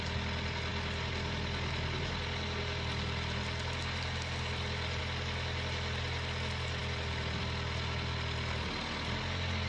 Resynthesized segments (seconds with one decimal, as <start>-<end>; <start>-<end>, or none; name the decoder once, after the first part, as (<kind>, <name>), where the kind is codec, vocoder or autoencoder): none

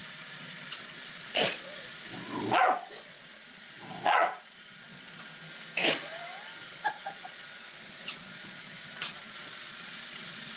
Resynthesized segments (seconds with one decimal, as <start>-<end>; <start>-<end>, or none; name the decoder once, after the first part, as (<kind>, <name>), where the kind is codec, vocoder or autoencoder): 0.0-5.2 (vocoder, Vocos); 6.7-10.6

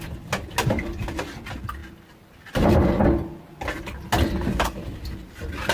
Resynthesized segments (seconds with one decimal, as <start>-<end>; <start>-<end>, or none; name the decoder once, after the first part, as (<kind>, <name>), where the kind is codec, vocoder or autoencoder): none

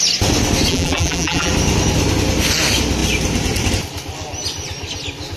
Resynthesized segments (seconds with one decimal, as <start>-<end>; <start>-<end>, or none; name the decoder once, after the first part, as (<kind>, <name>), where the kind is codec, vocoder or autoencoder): 0.7-1.5 (vocoder, BigVGAN v2)

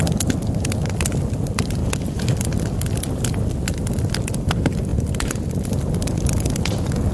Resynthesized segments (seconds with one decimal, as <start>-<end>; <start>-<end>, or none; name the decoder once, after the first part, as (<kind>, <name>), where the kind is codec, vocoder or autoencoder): none

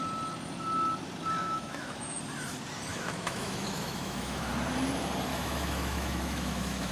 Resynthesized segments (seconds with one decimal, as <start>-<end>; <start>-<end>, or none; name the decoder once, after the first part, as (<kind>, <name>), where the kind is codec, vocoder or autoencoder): 1.4-2.2 (autoencoder, DAC-VAE); 2.9-4.5; 5.3-6.9